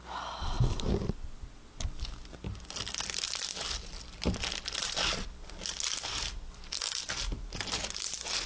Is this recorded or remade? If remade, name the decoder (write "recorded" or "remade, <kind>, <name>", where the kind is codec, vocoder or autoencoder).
recorded